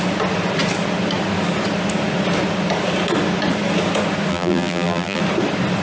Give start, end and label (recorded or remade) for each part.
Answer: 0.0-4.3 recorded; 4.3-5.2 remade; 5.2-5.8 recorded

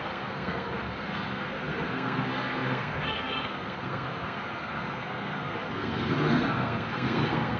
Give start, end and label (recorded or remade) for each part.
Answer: 0.0-7.6 remade

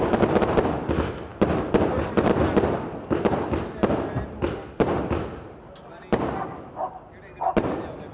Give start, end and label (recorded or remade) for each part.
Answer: 0.0-8.1 recorded